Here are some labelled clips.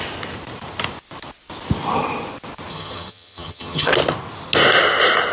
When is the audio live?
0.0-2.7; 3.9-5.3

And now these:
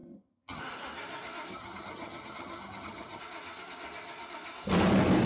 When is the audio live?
0.6-1.5; 3.2-5.3

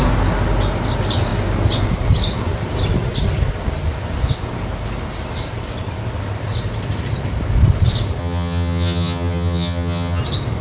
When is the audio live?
0.0-8.2; 10.2-10.6

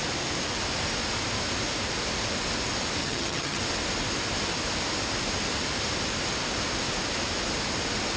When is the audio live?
0.0-3.0; 3.6-8.2

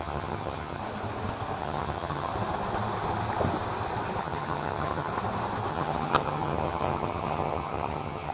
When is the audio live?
0.8-1.6; 2.3-4.2; 5.1-5.7

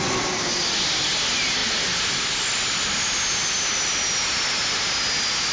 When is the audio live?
0.0-5.5

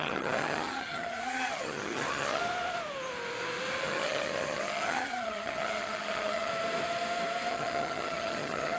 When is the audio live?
2.4-3.8; 6.5-7.5